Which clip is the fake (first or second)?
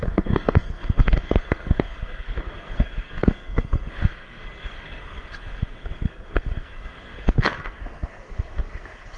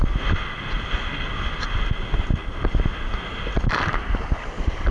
first